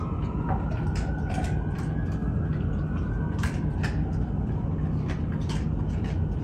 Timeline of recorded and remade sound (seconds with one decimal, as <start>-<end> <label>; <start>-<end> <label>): 0.0-6.4 recorded